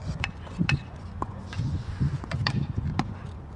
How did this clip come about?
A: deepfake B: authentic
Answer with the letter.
A